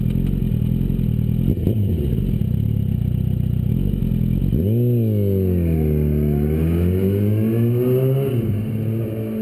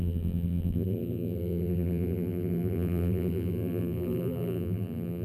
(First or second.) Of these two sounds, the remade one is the second